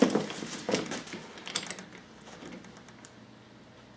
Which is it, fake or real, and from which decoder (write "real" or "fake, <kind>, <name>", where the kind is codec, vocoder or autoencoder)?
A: real